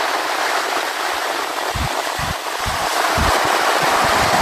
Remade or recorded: recorded